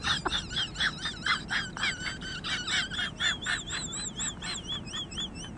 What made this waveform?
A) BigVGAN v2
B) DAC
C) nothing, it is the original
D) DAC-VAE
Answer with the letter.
C